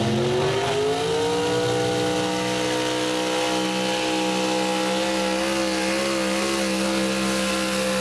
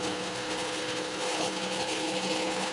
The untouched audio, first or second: first